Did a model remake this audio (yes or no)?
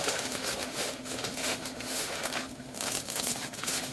yes